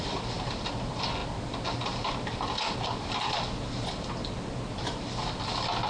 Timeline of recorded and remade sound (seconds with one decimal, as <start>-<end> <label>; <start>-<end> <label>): 0.0-5.9 recorded